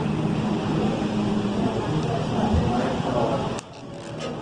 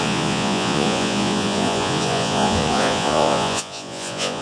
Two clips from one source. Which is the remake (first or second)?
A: second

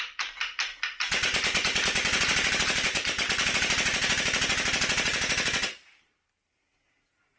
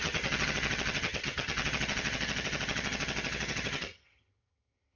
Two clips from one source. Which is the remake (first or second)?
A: second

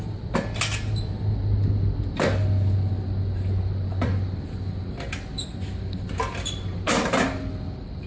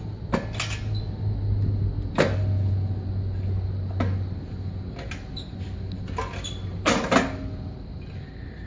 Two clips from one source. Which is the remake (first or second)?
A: first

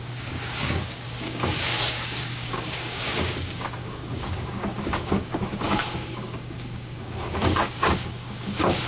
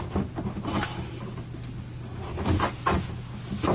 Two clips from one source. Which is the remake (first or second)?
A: first